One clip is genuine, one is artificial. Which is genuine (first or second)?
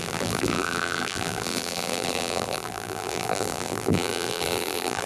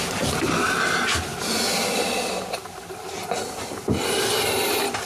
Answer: second